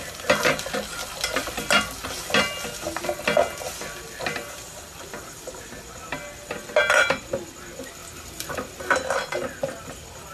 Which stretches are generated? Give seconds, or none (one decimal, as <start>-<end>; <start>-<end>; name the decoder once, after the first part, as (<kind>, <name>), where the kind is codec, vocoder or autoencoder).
none